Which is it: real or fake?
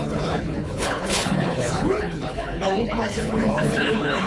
fake